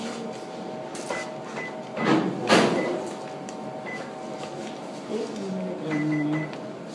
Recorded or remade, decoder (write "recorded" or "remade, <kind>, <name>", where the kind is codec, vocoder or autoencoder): recorded